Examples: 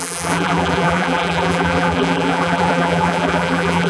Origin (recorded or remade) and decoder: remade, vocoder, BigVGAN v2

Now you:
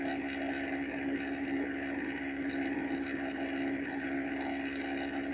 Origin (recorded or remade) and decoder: recorded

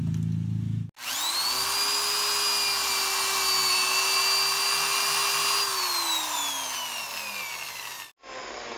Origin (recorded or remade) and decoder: recorded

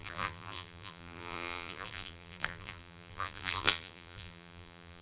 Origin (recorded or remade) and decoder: remade, vocoder, BigVGAN v2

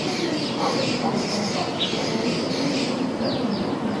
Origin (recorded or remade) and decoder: remade, vocoder, BigVGAN v2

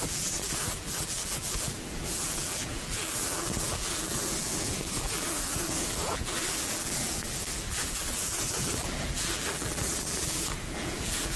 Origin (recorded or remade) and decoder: remade, vocoder, BigVGAN v2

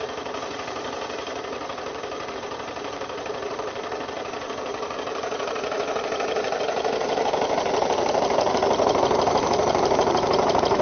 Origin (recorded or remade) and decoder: remade, vocoder, BigVGAN v2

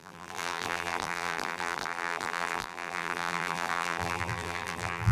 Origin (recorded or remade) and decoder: remade, vocoder, BigVGAN v2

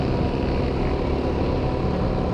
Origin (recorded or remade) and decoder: recorded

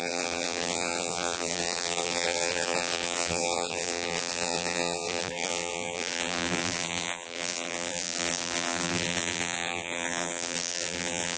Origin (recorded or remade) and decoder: remade, vocoder, BigVGAN v2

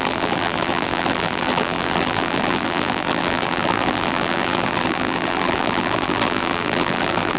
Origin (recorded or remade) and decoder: remade, vocoder, BigVGAN v2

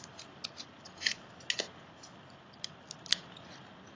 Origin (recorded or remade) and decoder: recorded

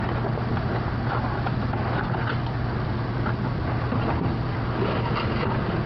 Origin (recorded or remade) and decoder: recorded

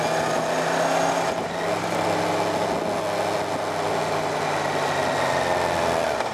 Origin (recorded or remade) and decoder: recorded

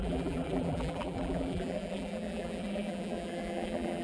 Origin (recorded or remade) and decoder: remade, vocoder, BigVGAN v2